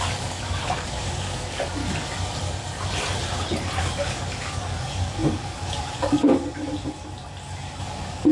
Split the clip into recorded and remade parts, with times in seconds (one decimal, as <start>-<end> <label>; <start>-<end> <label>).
0.0-1.8 remade; 1.8-3.8 recorded; 3.8-6.3 remade; 6.3-7.8 recorded; 7.8-8.3 remade